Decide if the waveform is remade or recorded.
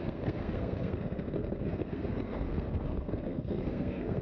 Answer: remade